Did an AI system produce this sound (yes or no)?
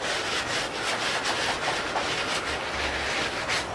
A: no